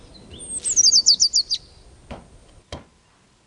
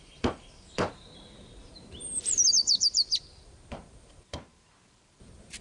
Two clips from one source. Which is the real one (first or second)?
first